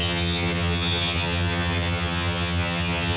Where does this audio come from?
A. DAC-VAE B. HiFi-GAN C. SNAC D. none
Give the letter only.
B